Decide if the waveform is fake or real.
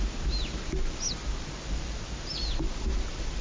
real